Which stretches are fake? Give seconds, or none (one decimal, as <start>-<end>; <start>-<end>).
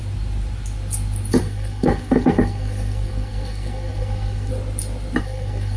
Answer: 1.4-4.5; 5.2-5.8